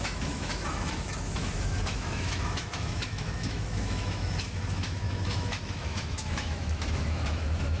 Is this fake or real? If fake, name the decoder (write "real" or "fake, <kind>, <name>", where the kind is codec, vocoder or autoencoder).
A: fake, autoencoder, DAC-VAE